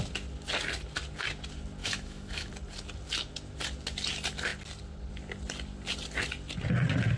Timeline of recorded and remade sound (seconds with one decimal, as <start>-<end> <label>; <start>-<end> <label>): 0.0-1.8 recorded; 1.8-2.5 remade; 2.5-7.2 recorded